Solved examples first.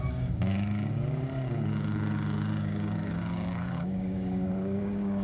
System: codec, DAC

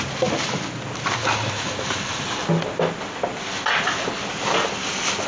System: none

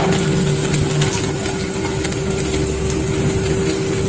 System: none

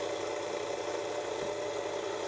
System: none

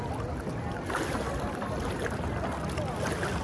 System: none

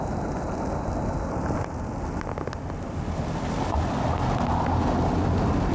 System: none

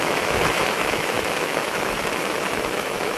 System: autoencoder, DAC-VAE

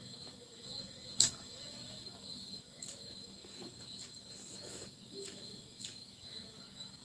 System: autoencoder, DAC-VAE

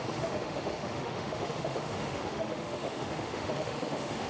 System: autoencoder, DAC-VAE